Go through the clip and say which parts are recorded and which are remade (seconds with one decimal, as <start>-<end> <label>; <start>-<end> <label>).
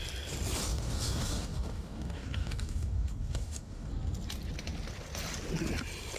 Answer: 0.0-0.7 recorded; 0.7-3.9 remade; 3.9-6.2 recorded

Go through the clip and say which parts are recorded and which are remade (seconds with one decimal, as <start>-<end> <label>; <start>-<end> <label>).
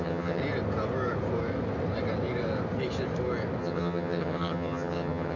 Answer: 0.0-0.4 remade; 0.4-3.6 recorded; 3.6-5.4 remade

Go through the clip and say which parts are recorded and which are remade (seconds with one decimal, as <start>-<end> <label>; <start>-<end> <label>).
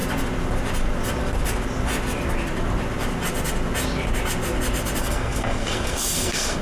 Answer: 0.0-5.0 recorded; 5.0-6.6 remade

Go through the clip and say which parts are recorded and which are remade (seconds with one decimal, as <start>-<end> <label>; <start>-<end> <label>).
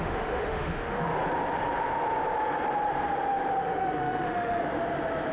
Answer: 0.0-1.1 remade; 1.1-3.6 recorded; 3.6-4.6 remade; 4.6-5.3 recorded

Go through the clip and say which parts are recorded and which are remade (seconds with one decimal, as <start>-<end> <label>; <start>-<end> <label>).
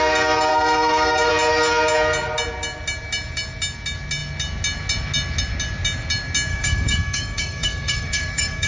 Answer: 0.0-0.5 recorded; 0.5-1.3 remade; 1.3-6.5 recorded; 6.5-8.7 remade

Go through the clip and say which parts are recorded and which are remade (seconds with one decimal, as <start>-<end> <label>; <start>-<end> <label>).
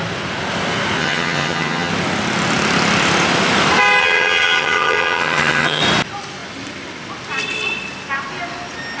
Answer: 0.0-1.0 recorded; 1.0-1.9 remade; 1.9-4.0 recorded; 4.0-5.8 remade; 5.8-9.0 recorded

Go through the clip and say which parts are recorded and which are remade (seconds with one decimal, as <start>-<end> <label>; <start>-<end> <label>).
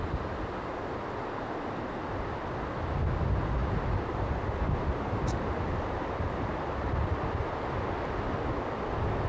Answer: 0.0-3.6 recorded; 3.6-6.9 remade; 6.9-9.3 recorded